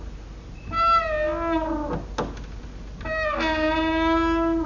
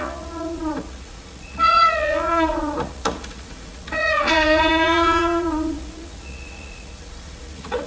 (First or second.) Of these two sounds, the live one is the first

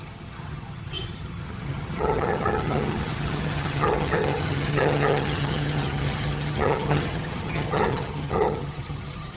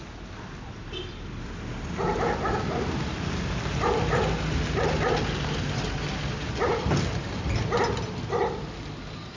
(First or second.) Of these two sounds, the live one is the second